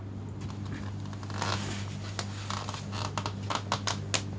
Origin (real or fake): real